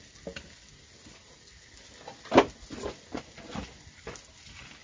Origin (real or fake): real